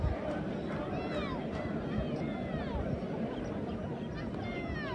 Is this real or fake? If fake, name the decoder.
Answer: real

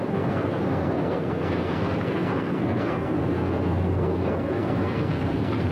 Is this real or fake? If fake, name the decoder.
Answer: fake, codec, SNAC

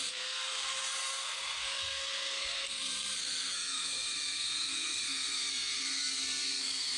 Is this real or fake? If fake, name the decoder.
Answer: fake, codec, SNAC